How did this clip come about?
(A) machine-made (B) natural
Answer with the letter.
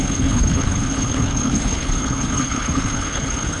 A